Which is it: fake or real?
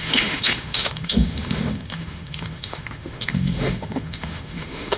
fake